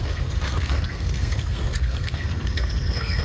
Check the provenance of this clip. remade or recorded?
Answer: remade